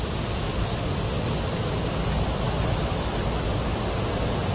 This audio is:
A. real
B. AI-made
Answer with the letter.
B